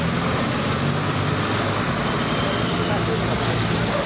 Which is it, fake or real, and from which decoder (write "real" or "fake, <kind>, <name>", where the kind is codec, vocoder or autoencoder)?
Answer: real